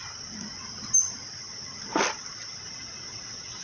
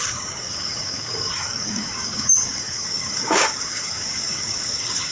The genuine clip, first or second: first